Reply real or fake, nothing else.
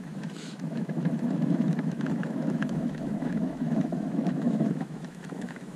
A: fake